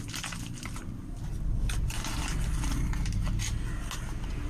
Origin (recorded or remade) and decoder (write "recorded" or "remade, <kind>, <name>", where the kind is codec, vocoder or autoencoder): recorded